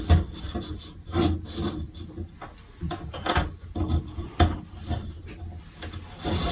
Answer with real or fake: real